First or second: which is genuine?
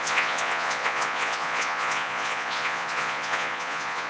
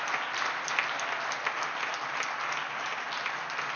second